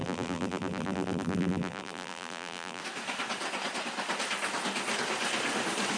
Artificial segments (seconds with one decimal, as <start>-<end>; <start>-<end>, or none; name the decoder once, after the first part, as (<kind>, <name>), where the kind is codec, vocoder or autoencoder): 0.0-2.8 (vocoder, BigVGAN v2)